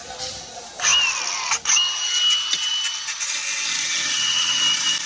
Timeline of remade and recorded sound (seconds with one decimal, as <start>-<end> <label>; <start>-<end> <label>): 0.0-3.8 recorded; 3.8-4.6 remade; 4.6-5.1 recorded